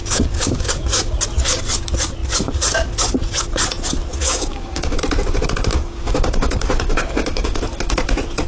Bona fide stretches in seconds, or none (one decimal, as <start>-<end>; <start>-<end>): 1.1-4.2; 5.0-5.7; 7.6-8.5